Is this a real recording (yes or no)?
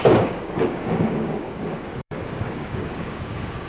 no